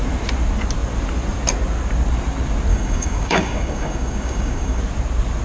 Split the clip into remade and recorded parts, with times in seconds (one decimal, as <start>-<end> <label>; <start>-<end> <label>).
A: 0.0-2.7 recorded; 2.7-4.8 remade; 4.8-5.4 recorded